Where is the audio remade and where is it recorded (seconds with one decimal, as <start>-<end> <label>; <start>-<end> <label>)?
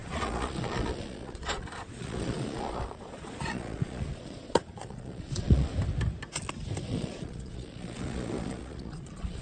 0.0-5.7 remade; 5.7-6.9 recorded; 6.9-9.4 remade